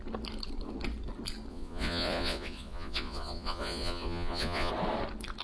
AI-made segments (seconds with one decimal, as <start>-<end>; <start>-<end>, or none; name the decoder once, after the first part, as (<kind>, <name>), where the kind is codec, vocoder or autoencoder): 1.5-4.7 (vocoder, Vocos)